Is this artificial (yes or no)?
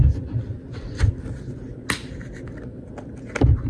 no